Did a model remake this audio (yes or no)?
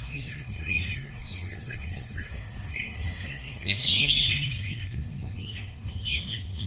yes